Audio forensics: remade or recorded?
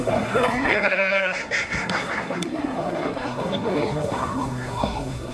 remade